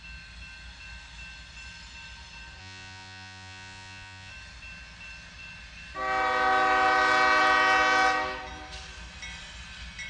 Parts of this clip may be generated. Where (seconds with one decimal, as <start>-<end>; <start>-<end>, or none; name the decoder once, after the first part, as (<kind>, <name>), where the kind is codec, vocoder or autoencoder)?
2.6-4.3 (vocoder, Vocos)